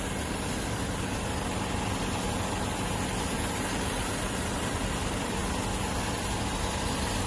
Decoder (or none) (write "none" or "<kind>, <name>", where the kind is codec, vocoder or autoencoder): none